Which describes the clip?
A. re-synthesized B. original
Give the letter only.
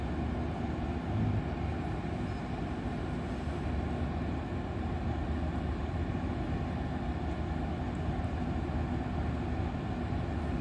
B